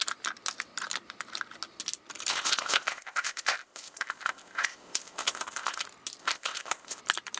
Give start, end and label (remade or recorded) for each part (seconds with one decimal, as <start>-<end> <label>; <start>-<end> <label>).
0.0-2.3 recorded; 2.3-5.8 remade; 5.8-6.2 recorded; 6.2-7.0 remade; 7.0-7.4 recorded